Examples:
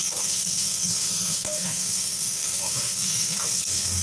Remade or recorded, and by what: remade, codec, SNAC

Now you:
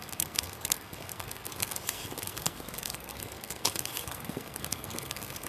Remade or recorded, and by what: remade, codec, SNAC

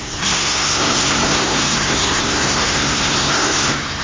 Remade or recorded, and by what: remade, codec, SNAC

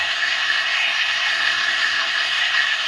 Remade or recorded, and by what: remade, codec, SNAC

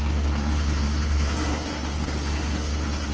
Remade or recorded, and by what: remade, codec, SNAC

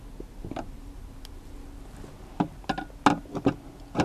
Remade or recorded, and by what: recorded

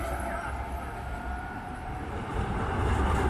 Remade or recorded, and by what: recorded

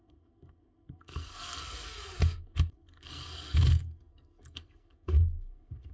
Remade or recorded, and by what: remade, codec, SNAC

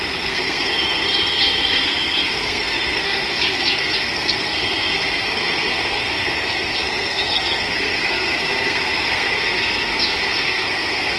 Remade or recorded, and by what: remade, codec, SNAC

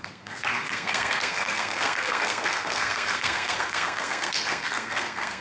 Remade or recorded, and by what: remade, codec, SNAC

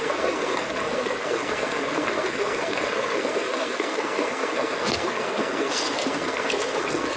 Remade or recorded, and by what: remade, codec, SNAC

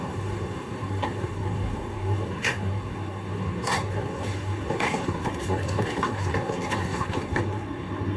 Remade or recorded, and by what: remade, codec, SNAC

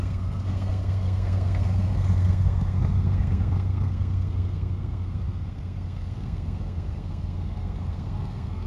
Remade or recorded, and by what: remade, codec, SNAC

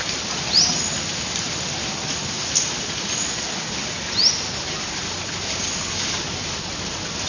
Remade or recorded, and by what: recorded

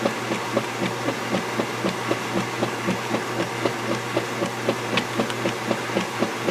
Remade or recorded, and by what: recorded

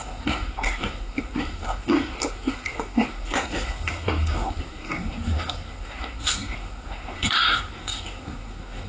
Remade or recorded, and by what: remade, codec, SNAC